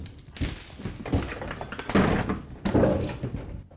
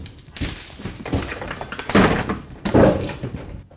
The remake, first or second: second